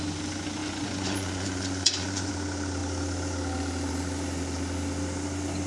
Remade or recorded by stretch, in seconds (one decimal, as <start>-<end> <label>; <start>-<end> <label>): 0.0-0.6 recorded; 0.6-2.3 remade; 2.3-5.7 recorded